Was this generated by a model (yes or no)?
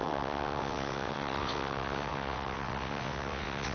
yes